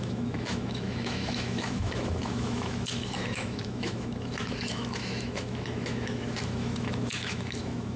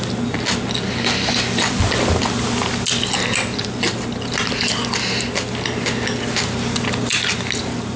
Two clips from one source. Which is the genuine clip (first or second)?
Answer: second